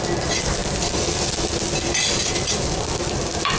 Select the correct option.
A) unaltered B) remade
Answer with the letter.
B